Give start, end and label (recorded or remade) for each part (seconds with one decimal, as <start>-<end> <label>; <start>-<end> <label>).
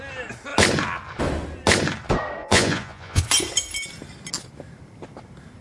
0.0-2.4 recorded; 2.4-3.2 remade; 3.2-5.6 recorded